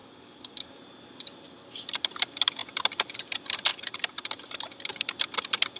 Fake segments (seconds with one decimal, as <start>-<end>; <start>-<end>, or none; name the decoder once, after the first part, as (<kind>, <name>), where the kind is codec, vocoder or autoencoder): 0.0-0.8 (codec, DAC)